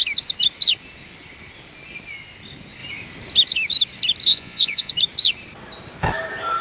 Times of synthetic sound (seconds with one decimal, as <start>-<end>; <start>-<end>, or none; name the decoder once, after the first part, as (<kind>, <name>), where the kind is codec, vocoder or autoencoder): 4.3-4.9 (vocoder, Vocos)